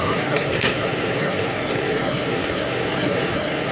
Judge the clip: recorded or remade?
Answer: remade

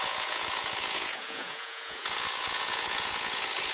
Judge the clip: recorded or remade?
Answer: remade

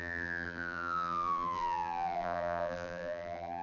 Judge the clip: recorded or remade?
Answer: remade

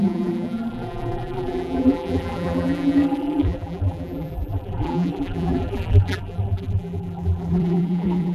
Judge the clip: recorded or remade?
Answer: remade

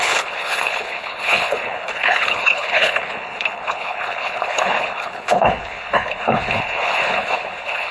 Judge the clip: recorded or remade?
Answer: remade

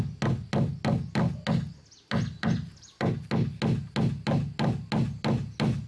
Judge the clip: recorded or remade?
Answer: recorded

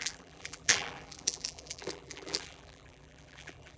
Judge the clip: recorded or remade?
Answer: remade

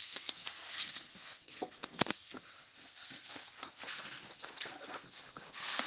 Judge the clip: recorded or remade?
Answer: remade